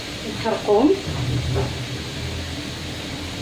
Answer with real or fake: real